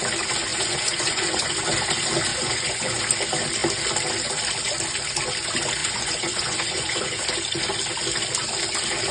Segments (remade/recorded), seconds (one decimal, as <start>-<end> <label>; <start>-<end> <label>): 0.0-0.5 recorded; 0.5-1.6 remade; 1.6-2.3 recorded; 2.3-3.0 remade; 3.0-5.8 recorded; 5.8-7.2 remade; 7.2-9.1 recorded